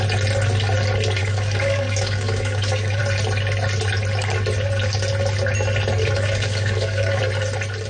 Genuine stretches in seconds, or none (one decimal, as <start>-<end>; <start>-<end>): 0.0-1.2; 3.0-6.0; 7.2-7.9